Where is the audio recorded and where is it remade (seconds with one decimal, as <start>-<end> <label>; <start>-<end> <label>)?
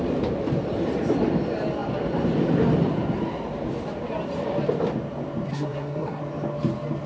0.0-5.5 recorded; 5.5-6.2 remade; 6.2-7.1 recorded